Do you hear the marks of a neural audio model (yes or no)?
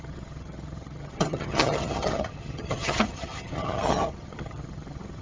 yes